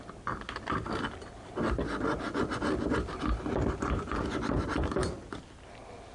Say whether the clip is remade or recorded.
recorded